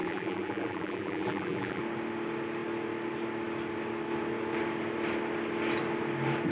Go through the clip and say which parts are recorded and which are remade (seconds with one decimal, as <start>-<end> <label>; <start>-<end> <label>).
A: 0.0-1.8 remade; 1.8-6.5 recorded